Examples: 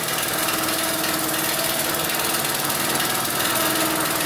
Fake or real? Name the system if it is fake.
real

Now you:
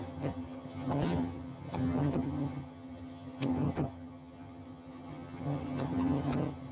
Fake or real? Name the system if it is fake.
fake, vocoder, HiFi-GAN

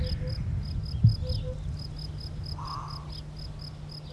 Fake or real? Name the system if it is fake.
real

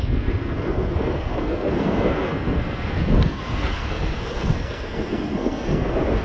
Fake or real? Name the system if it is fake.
fake, codec, SNAC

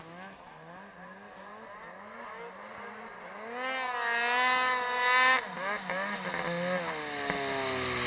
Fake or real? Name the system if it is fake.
real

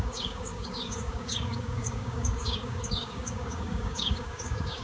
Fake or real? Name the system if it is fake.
fake, codec, DAC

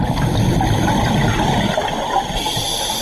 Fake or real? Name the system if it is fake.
real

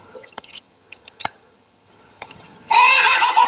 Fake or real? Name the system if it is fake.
fake, vocoder, HiFi-GAN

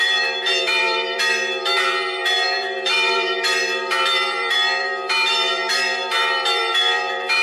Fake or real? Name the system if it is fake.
fake, vocoder, BigVGAN v2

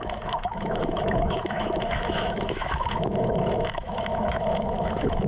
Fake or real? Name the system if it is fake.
fake, autoencoder, DAC-VAE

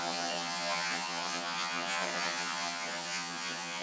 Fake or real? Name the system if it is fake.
fake, vocoder, HiFi-GAN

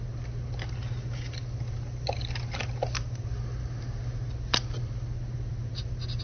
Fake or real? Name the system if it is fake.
real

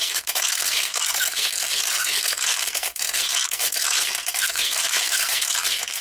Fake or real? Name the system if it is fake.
fake, codec, SNAC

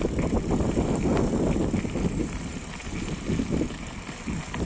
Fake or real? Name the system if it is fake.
real